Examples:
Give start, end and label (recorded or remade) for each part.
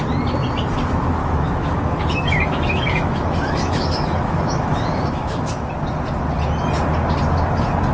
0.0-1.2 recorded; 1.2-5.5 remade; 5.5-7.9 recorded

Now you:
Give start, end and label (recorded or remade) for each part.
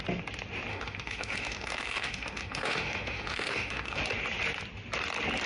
0.0-0.7 recorded; 0.7-4.0 remade; 4.0-5.5 recorded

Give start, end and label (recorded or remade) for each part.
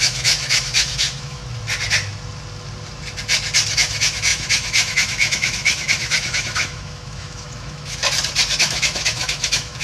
0.0-1.4 remade; 1.4-3.7 recorded; 3.7-8.0 remade; 8.0-8.6 recorded; 8.6-9.8 remade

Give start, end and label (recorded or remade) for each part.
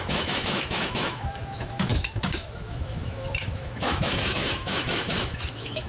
0.0-5.9 remade